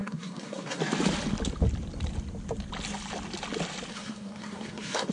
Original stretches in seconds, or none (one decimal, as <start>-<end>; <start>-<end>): 0.8-3.9

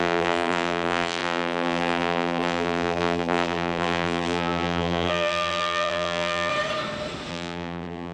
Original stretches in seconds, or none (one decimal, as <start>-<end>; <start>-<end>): 6.5-7.3

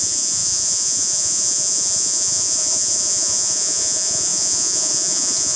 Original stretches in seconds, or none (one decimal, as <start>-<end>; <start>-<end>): none

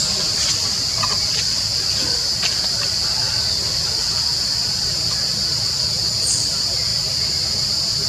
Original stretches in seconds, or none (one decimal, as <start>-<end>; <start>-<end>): 0.0-8.1